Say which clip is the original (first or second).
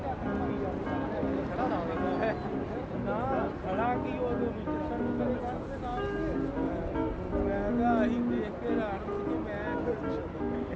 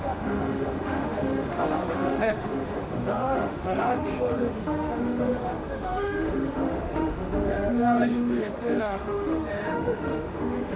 first